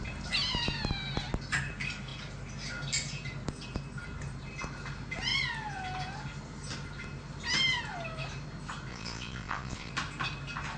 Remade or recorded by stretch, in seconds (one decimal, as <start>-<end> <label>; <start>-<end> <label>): 0.0-8.9 recorded; 8.9-9.9 remade; 9.9-10.8 recorded